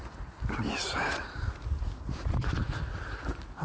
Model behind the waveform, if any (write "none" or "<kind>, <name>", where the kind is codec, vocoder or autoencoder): none